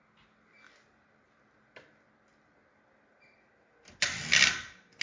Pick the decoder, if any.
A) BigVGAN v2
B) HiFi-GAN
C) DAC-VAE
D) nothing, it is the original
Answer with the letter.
D